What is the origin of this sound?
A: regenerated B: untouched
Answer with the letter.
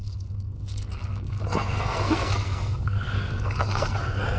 A